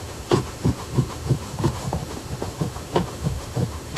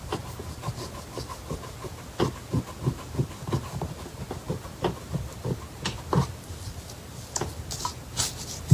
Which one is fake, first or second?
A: first